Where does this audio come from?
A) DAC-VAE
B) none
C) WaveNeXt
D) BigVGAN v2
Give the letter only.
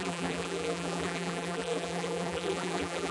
D